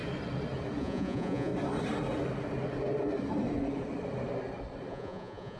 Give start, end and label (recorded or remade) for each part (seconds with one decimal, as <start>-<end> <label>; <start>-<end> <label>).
0.0-0.8 recorded; 0.8-1.5 remade; 1.5-4.9 recorded; 4.9-5.6 remade